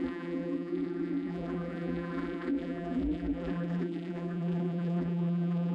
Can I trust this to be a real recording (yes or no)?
no